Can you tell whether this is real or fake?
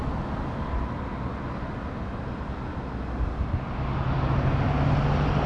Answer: real